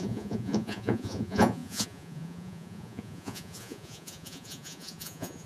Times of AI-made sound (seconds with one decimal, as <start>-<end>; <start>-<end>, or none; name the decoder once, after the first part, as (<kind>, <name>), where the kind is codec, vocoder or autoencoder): 0.0-5.5 (vocoder, Vocos)